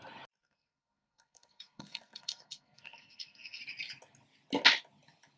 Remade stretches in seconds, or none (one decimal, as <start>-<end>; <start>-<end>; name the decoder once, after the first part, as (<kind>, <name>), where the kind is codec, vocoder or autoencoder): 0.4-3.6 (codec, SNAC)